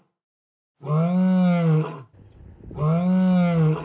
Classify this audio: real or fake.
real